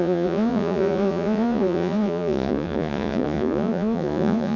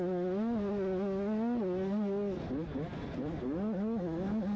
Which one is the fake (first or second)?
first